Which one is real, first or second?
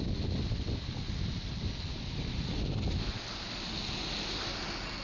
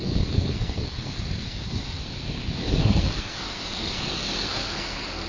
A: first